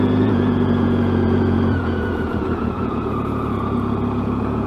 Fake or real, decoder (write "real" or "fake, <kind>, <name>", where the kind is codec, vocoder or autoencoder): fake, vocoder, Vocos